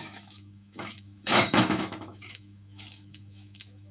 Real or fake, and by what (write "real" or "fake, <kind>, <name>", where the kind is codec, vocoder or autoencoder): fake, autoencoder, DAC-VAE